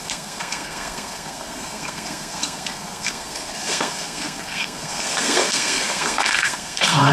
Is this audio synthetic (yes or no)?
yes